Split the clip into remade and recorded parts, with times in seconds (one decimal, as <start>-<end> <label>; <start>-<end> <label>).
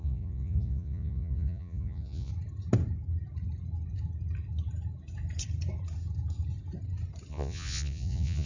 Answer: 0.0-2.3 remade; 2.3-7.3 recorded; 7.3-8.5 remade